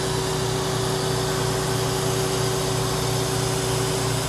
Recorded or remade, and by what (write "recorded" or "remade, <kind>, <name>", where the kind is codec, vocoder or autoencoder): recorded